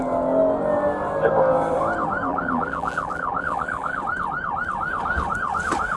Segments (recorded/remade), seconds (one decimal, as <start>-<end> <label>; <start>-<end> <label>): 0.0-2.3 recorded; 2.3-4.0 remade; 4.0-6.0 recorded